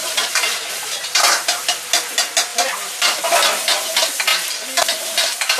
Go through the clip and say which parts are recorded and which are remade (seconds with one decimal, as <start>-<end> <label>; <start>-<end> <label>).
0.0-0.7 remade; 0.7-2.5 recorded; 2.5-3.2 remade; 3.2-5.6 recorded

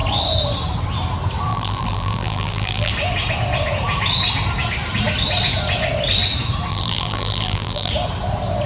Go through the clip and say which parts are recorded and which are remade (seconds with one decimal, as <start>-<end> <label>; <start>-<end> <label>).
0.0-1.5 recorded; 1.5-2.9 remade; 2.9-6.7 recorded; 6.7-7.9 remade; 7.9-8.7 recorded

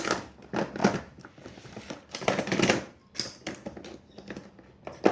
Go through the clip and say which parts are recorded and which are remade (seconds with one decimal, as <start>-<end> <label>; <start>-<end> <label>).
0.0-0.8 recorded; 0.8-3.0 remade; 3.0-5.1 recorded

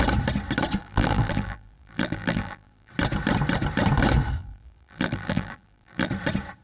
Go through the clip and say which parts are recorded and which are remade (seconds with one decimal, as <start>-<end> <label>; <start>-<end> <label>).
0.0-0.8 recorded; 0.8-2.9 remade; 2.9-4.4 recorded; 4.4-6.1 remade; 6.1-6.6 recorded

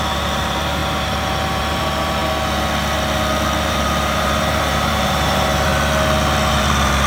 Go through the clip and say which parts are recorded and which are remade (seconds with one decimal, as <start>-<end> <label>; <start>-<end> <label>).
0.0-2.2 remade; 2.2-3.6 recorded; 3.6-5.7 remade; 5.7-6.5 recorded; 6.5-7.1 remade

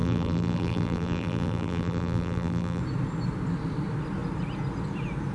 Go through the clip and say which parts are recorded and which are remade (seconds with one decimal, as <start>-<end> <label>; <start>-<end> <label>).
0.0-2.8 remade; 2.8-5.3 recorded